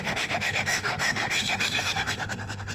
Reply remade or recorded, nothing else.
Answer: remade